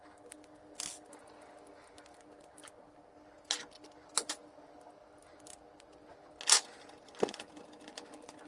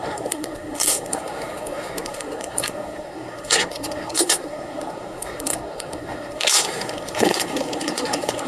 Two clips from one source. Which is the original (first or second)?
first